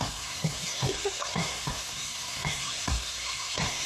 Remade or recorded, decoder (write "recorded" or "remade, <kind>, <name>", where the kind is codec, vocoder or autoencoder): remade, codec, SNAC